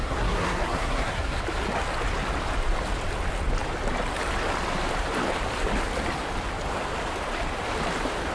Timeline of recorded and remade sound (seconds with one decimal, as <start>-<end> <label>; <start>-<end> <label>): 0.0-1.4 remade; 1.4-8.3 recorded